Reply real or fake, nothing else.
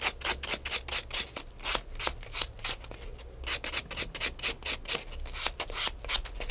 real